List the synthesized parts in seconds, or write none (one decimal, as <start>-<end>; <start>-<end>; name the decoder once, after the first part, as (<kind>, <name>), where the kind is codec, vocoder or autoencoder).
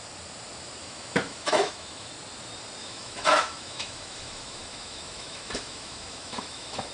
0.8-2.1 (autoencoder, DAC-VAE); 2.8-6.9